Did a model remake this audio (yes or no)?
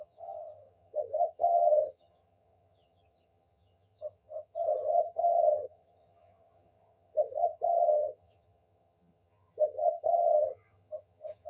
yes